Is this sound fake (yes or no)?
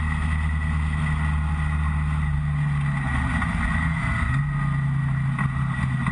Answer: no